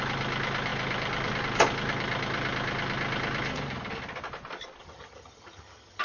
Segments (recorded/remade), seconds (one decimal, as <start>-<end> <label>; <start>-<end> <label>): 0.0-4.8 recorded; 4.8-6.0 remade